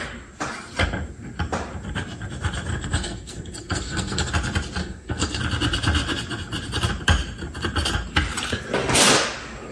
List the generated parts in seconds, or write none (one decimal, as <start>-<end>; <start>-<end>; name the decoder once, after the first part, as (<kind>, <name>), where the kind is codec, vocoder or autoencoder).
2.7-4.3 (codec, SNAC); 4.8-5.4